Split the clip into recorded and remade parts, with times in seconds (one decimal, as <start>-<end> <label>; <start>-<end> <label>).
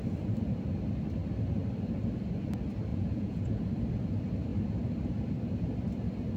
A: 0.0-2.9 recorded; 2.9-3.7 remade; 3.7-6.4 recorded